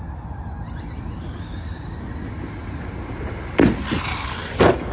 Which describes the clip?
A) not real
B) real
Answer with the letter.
B